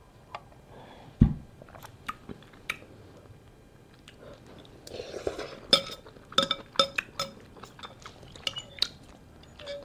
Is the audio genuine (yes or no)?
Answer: yes